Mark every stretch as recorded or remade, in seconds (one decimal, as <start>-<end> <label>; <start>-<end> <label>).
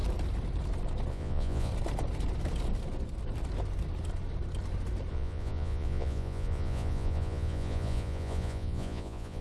0.0-1.1 recorded; 1.1-1.7 remade; 1.7-5.1 recorded; 5.1-9.4 remade